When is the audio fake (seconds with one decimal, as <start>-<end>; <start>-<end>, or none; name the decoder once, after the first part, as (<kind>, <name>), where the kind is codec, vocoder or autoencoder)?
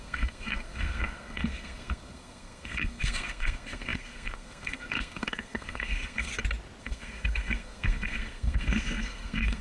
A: 0.0-6.3 (codec, SNAC); 6.8-9.6